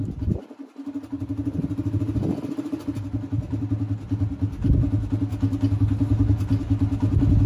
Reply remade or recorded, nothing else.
recorded